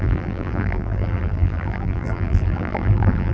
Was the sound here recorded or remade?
remade